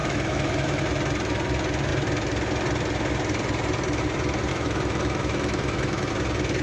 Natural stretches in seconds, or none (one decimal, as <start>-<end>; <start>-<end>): 0.8-4.5; 6.1-6.6